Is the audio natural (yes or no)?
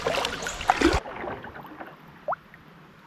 yes